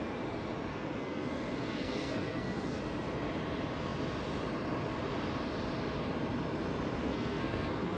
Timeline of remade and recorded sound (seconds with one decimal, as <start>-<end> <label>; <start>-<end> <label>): 0.0-0.7 recorded; 0.7-2.8 remade; 2.8-7.0 recorded; 7.0-8.0 remade